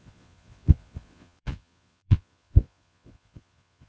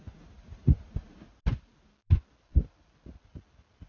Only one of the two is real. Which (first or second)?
second